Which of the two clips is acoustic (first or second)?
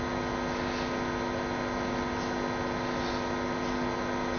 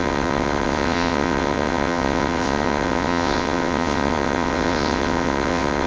first